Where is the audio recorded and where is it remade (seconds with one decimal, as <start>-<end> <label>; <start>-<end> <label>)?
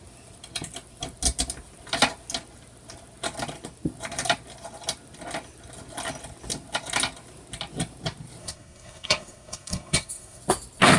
0.0-8.4 recorded; 8.4-10.4 remade; 10.4-11.0 recorded